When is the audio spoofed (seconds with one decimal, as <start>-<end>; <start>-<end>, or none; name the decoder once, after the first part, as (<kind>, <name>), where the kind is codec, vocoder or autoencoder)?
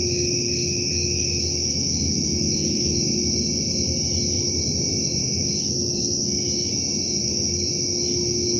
0.0-3.0 (autoencoder, DAC-VAE); 5.2-6.7; 7.2-7.7